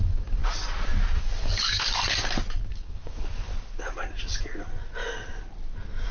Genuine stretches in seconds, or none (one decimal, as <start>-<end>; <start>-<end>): 0.4-1.2; 2.0-2.7; 3.5-6.1

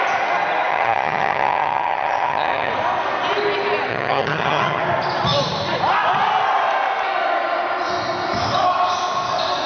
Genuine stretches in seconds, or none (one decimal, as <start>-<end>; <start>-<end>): 0.0-0.7; 2.7-3.9; 4.8-9.7

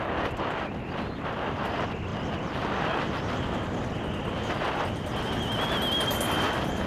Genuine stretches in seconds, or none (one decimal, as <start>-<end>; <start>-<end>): 0.0-6.9

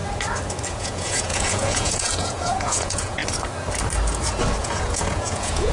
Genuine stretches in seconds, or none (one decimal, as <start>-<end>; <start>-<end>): 0.0-0.7; 3.2-4.6